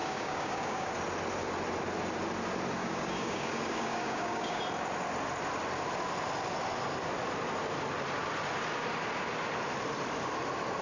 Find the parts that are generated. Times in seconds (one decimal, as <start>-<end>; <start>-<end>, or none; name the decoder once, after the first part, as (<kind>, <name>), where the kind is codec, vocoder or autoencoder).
0.0-0.9 (codec, DAC); 2.8-4.6